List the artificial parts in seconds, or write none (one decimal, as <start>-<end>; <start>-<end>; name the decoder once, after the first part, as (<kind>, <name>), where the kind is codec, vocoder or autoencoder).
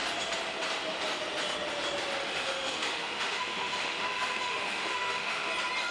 2.2-5.5 (autoencoder, DAC-VAE)